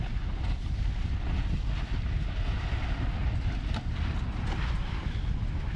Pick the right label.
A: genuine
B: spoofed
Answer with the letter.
A